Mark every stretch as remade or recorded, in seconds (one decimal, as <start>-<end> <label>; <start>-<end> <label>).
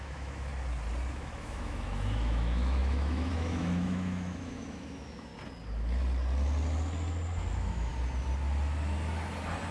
0.0-0.5 remade; 0.5-1.1 recorded; 1.1-5.3 remade; 5.3-7.5 recorded; 7.5-7.9 remade; 7.9-9.7 recorded